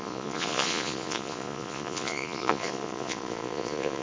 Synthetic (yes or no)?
yes